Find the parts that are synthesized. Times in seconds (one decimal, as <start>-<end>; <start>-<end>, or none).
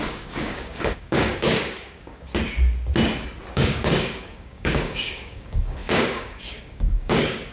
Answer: 0.0-2.3; 3.5-7.5